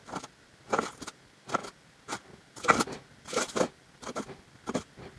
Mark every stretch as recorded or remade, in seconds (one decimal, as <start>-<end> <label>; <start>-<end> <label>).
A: 0.0-5.2 recorded